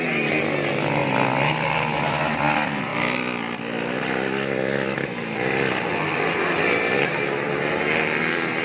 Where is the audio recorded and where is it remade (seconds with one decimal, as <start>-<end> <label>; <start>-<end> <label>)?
0.0-8.6 recorded